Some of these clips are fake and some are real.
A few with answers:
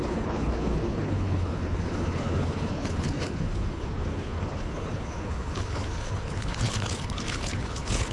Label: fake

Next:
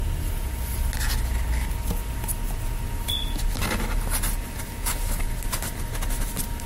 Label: real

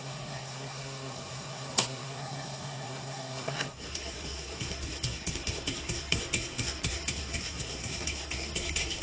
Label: fake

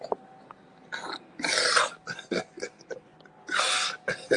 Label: real